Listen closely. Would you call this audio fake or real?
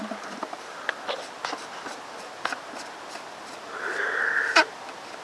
real